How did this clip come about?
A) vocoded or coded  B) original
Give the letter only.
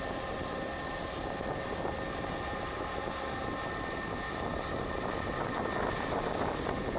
B